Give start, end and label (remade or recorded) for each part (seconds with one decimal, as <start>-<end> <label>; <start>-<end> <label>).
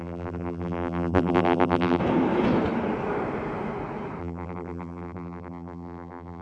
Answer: 0.0-2.0 remade; 2.0-4.2 recorded; 4.2-6.4 remade